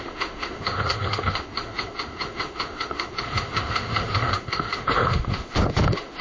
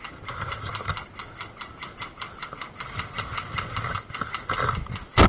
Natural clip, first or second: second